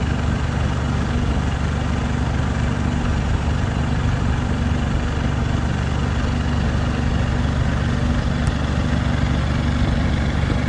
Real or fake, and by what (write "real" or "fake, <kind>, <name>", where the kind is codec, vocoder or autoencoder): real